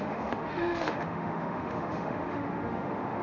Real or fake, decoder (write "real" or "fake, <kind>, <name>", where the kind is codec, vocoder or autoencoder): fake, autoencoder, DAC-VAE